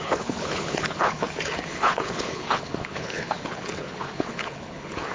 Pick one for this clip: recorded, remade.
remade